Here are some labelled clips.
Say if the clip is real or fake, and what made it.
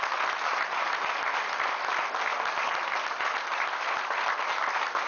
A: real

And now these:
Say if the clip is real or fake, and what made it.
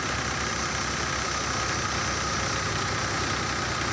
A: real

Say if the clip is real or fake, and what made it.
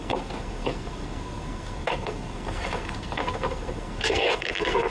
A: fake, codec, SNAC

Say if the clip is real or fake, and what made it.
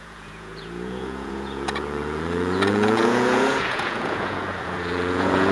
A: fake, vocoder, Vocos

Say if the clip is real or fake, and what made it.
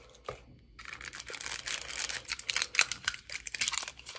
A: real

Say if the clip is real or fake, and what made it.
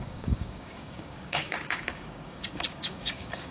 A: fake, codec, DAC